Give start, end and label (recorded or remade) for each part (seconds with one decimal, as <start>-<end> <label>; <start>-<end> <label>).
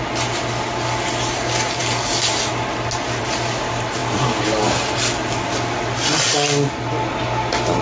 0.0-7.8 recorded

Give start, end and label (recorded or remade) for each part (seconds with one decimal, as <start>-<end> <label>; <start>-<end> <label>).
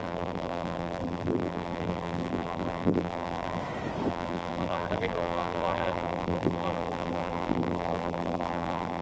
0.0-3.6 remade; 3.6-4.1 recorded; 4.1-9.0 remade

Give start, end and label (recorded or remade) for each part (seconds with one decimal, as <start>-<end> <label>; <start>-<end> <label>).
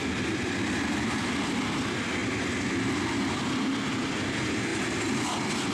0.0-4.7 recorded; 4.7-5.3 remade; 5.3-5.7 recorded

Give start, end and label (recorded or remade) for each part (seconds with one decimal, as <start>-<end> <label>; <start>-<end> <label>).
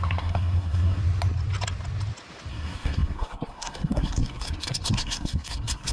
0.0-1.0 remade; 1.0-2.5 recorded; 2.5-5.9 remade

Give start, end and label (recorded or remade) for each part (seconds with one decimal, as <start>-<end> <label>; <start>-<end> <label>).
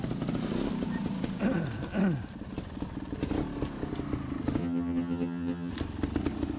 0.0-4.6 recorded; 4.6-5.7 remade; 5.7-6.6 recorded